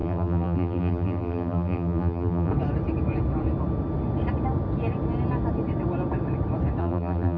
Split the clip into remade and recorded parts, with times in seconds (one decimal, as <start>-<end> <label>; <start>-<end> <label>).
0.0-2.5 remade; 2.5-6.8 recorded; 6.8-7.4 remade